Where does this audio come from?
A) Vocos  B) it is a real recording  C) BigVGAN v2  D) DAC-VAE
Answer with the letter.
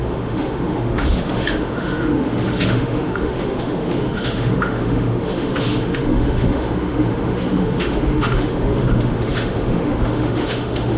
D